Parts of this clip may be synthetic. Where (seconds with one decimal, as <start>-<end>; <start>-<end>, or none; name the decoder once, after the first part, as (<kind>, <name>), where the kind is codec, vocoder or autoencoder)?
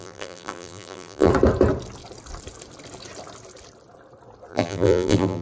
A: 0.0-1.3 (vocoder, BigVGAN v2); 4.5-5.4